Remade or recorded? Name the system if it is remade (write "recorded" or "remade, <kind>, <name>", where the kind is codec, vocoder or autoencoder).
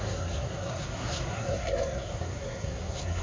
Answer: remade, codec, SNAC